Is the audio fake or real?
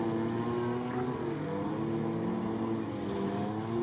real